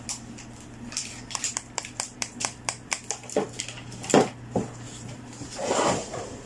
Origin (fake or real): fake